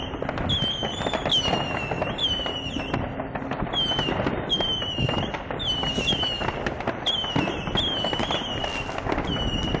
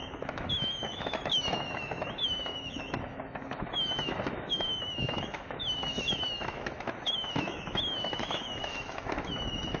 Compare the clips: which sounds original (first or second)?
first